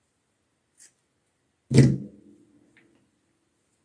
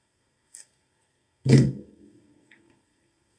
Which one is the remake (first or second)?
second